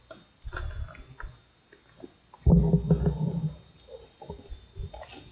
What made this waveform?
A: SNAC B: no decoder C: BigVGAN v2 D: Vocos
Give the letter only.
B